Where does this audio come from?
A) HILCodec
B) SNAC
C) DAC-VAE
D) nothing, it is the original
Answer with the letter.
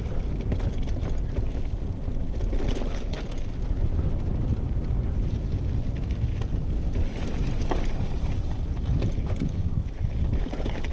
D